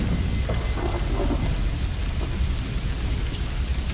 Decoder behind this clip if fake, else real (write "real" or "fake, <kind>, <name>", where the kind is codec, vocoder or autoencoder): real